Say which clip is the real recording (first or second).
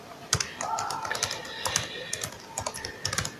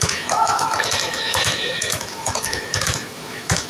first